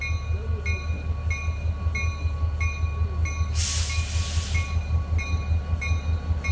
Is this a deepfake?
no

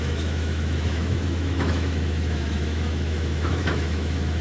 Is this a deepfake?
yes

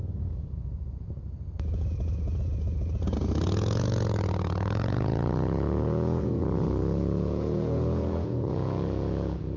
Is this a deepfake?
yes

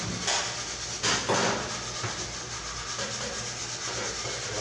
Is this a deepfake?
no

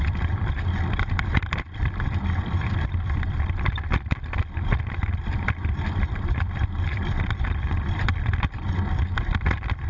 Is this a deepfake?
yes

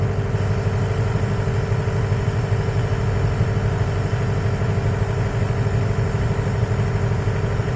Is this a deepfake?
no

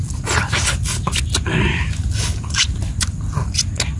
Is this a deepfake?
no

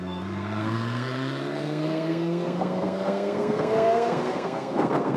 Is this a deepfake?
yes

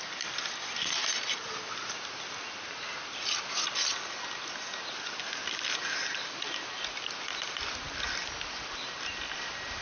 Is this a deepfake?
no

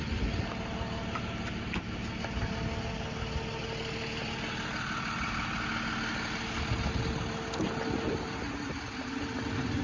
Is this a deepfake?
no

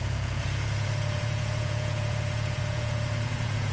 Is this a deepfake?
yes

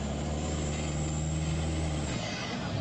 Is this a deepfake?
no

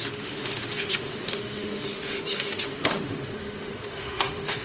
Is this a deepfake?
yes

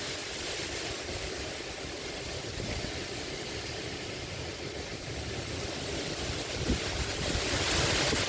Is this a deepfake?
no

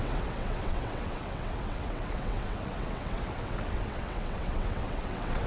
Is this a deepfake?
yes